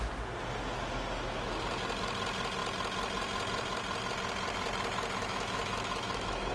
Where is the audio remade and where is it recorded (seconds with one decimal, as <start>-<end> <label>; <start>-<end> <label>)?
0.0-5.2 recorded; 5.2-6.5 remade

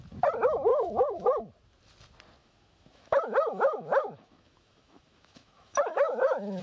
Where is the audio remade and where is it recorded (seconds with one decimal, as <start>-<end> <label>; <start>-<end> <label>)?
0.0-0.7 recorded; 0.7-1.4 remade; 1.4-2.4 recorded; 2.4-6.6 remade

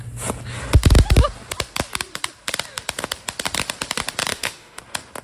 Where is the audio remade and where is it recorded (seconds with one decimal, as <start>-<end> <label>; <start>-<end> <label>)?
0.0-4.3 recorded; 4.3-4.8 remade; 4.8-5.2 recorded

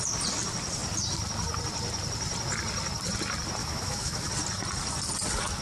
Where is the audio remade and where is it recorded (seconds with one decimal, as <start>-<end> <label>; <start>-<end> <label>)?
0.0-3.6 recorded; 3.6-4.3 remade; 4.3-5.6 recorded

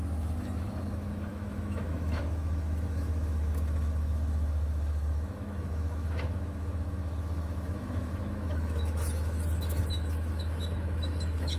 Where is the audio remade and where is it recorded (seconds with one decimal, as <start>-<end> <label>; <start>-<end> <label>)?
0.0-11.6 remade

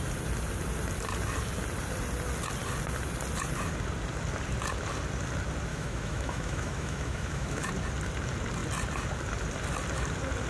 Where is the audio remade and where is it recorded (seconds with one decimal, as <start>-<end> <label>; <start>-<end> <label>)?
0.0-5.7 recorded; 5.7-7.7 remade; 7.7-10.5 recorded

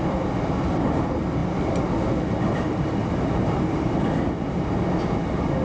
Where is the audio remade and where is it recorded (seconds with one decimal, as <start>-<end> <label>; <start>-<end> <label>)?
0.0-5.6 recorded

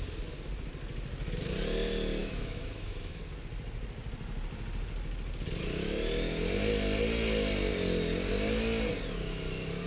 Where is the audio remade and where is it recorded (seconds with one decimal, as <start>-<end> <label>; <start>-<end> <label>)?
0.0-2.2 recorded; 2.2-3.2 remade; 3.2-9.9 recorded